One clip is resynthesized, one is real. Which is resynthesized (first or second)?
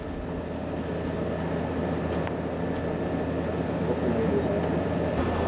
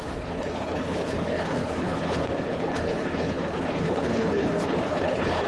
second